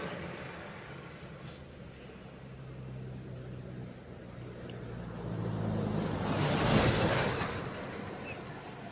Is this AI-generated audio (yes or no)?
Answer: no